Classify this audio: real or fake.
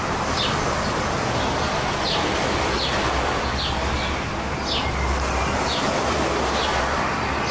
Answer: real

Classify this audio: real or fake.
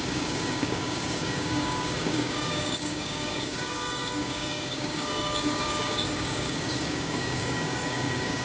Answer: fake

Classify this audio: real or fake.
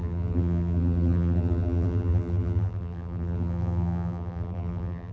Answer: fake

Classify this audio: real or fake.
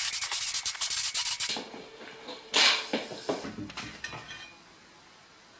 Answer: real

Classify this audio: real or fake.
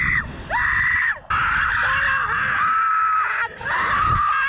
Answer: real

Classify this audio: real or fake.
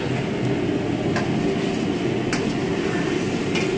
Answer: real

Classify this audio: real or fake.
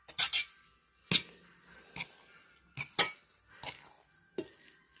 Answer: real